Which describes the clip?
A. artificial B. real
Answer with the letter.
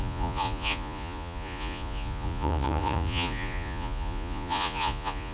A